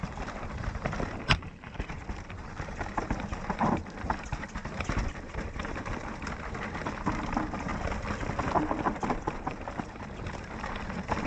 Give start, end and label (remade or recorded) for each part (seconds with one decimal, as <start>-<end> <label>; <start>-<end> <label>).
0.0-7.7 remade; 7.7-9.1 recorded; 9.1-11.3 remade